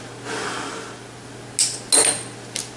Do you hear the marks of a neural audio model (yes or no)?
no